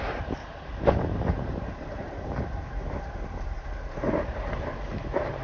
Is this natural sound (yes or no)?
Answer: no